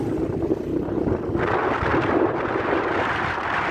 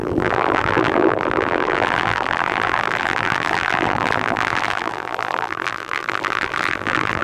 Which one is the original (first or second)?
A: first